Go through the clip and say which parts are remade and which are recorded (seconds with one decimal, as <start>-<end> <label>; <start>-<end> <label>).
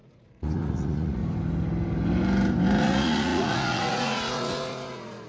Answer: 0.0-1.2 remade; 1.2-2.8 recorded; 2.8-5.3 remade